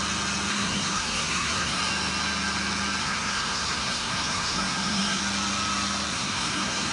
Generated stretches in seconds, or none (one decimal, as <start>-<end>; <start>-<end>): 0.5-1.8; 3.0-5.2; 6.1-6.9